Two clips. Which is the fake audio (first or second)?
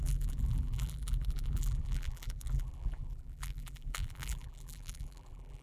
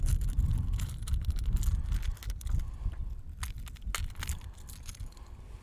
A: first